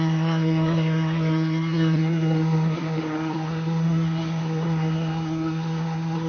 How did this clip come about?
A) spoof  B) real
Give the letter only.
A